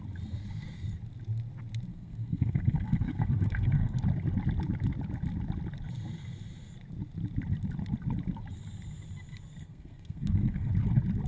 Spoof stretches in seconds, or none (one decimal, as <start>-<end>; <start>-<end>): 1.9-4.0; 9.6-10.7